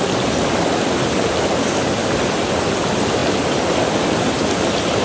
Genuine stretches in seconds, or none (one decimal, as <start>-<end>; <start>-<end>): 0.0-5.0